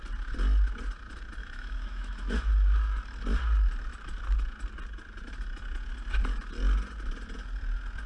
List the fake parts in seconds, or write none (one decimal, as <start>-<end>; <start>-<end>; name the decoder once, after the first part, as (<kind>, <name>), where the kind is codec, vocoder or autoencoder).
1.4-2.5 (autoencoder, DAC-VAE)